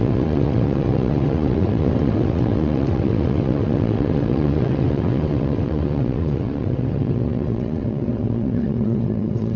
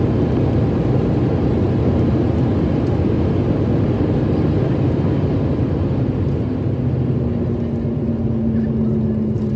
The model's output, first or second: first